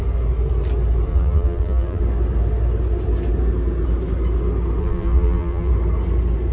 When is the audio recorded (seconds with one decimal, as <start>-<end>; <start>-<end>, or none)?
0.0-1.1; 2.0-4.8; 5.7-6.5